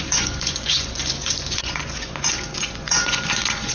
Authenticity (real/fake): fake